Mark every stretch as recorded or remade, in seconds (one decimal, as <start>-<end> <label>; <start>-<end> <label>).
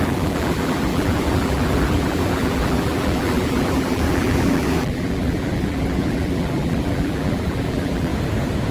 0.0-8.1 remade; 8.1-8.7 recorded